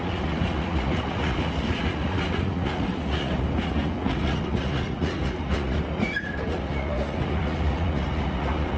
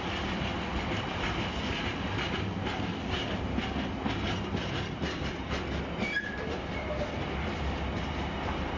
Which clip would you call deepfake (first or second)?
first